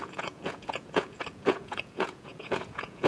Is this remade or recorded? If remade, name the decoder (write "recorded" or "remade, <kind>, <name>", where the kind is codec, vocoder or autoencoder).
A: remade, vocoder, Vocos